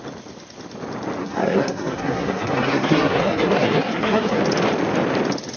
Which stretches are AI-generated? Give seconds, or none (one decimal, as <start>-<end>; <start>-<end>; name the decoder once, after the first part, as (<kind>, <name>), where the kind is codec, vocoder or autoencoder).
1.2-4.4 (codec, SNAC)

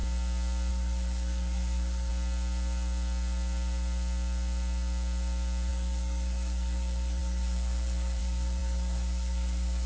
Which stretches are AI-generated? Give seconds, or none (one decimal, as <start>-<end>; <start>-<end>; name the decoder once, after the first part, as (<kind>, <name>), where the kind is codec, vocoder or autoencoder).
0.7-2.1 (codec, SNAC); 5.7-9.9

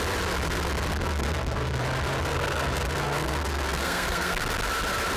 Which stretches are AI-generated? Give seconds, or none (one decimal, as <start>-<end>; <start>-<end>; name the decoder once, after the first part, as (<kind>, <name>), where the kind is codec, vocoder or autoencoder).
1.0-1.8 (codec, SNAC); 2.3-4.4